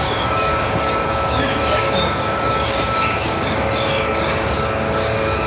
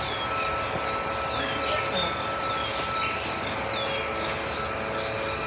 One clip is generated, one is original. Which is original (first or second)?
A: second